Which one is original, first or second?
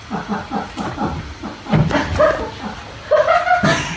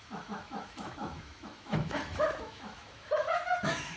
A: first